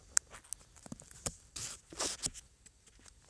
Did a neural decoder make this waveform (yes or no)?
no